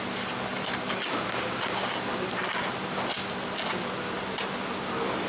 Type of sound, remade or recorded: recorded